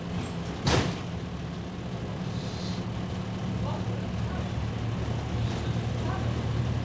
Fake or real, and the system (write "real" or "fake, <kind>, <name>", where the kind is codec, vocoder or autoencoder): real